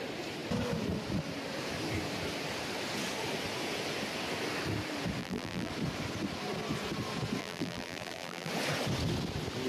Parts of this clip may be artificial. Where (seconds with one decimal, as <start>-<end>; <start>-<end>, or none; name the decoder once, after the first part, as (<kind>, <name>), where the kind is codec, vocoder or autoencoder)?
5.2-5.7 (vocoder, BigVGAN v2); 7.4-8.5